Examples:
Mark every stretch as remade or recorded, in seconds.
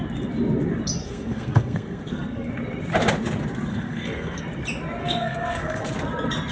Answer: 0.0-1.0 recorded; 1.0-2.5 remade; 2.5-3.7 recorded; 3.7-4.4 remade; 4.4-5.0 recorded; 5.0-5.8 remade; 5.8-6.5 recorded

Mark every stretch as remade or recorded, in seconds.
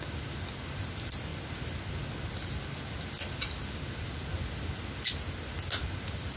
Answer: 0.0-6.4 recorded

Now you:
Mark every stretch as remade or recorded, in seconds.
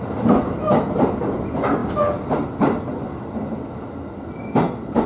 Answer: 0.0-5.1 recorded